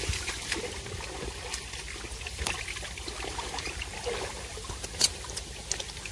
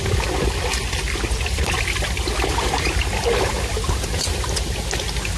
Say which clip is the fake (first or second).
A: first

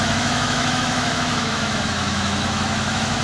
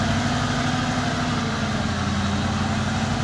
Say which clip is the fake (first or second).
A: first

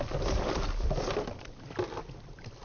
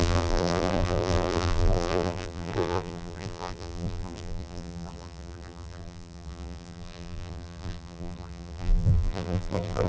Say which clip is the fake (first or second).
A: second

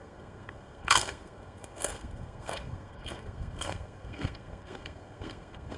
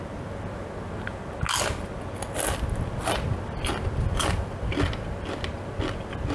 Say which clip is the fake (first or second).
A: first